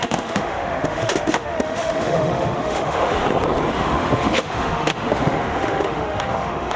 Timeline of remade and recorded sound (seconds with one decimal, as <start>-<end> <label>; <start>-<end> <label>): 0.0-3.2 remade; 3.2-3.7 recorded; 3.7-6.8 remade